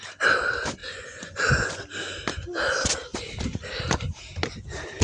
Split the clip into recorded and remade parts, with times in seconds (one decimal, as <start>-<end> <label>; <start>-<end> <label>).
0.0-0.8 recorded; 0.8-1.8 remade; 1.8-5.0 recorded